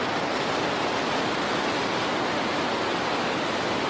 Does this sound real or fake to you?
real